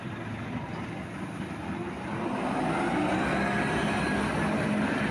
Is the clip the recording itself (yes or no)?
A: yes